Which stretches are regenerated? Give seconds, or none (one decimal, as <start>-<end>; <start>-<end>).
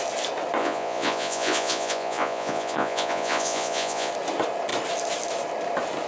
0.6-4.1